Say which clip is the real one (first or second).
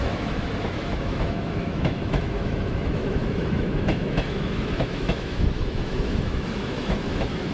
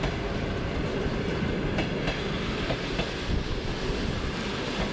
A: second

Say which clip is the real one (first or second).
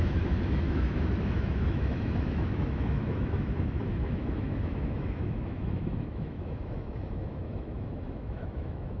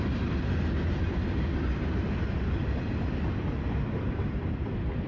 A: second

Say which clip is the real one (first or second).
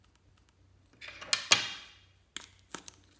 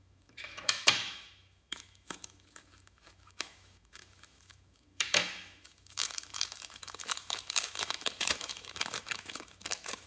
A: first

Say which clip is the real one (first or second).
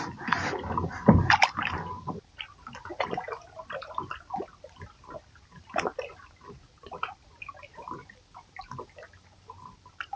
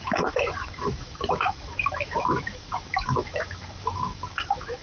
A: first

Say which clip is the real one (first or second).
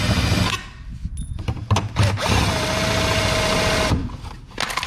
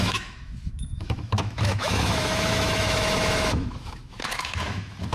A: first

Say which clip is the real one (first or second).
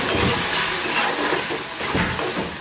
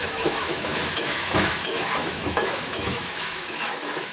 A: first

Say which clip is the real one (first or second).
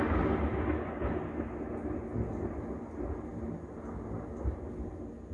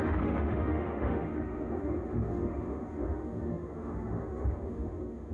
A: first